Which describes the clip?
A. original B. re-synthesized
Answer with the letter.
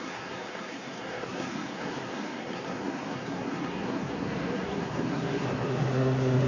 B